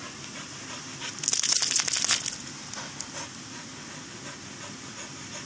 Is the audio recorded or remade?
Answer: recorded